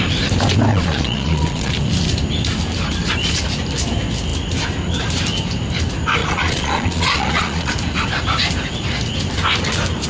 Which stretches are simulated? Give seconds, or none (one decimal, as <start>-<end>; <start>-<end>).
0.7-1.7; 6.2-7.7